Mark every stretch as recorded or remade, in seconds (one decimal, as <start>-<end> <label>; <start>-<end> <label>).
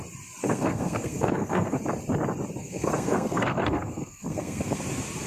0.0-0.4 recorded; 0.4-1.8 remade; 1.8-2.6 recorded; 2.6-4.8 remade; 4.8-5.3 recorded